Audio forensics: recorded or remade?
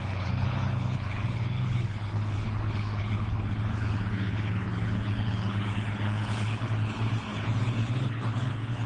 remade